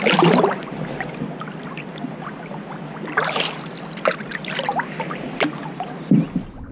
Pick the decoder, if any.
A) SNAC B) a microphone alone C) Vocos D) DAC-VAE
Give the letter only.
B